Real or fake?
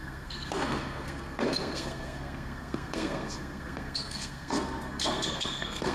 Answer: fake